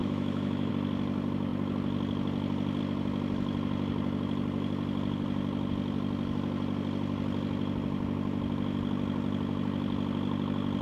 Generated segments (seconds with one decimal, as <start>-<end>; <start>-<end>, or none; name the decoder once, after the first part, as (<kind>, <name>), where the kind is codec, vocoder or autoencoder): 0.0-0.7 (autoencoder, DAC-VAE)